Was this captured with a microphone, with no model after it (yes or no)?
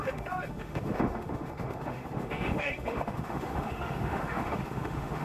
no